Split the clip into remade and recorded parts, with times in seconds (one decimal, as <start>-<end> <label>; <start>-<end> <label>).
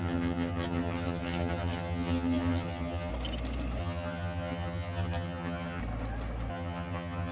0.0-3.1 remade; 3.1-3.8 recorded; 3.8-5.8 remade; 5.8-6.5 recorded; 6.5-7.3 remade